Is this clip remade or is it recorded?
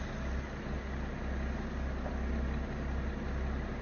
recorded